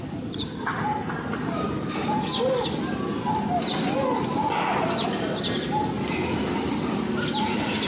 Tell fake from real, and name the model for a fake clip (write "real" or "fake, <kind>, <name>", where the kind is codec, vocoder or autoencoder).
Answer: real